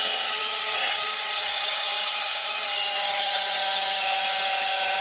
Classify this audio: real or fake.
fake